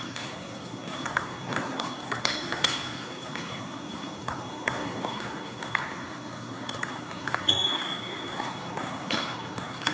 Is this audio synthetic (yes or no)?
yes